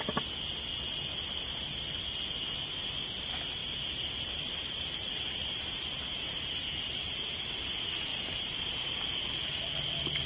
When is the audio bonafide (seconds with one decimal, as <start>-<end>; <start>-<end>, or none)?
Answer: 0.0-3.6; 7.6-8.1; 9.2-10.3